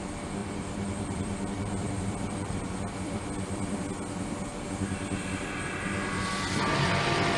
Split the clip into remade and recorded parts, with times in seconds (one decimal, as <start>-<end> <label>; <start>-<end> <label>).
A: 0.0-0.4 recorded; 0.4-3.8 remade; 3.8-7.4 recorded